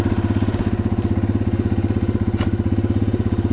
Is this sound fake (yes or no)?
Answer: no